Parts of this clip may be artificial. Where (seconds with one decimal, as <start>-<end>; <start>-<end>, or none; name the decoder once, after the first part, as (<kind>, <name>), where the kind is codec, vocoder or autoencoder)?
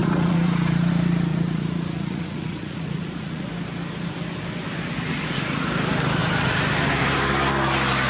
0.0-0.9 (vocoder, Vocos); 1.3-3.5; 5.1-5.6